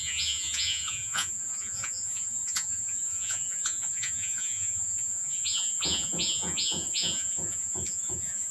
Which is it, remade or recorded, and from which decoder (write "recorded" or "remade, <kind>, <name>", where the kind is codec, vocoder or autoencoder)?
remade, vocoder, Vocos